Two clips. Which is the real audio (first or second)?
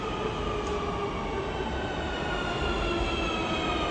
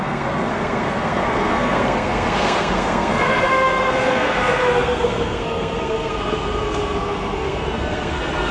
first